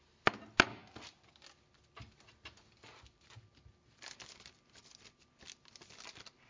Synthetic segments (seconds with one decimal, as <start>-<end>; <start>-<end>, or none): none